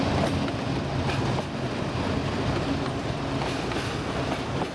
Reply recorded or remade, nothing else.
recorded